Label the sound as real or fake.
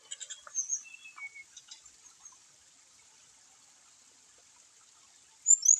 real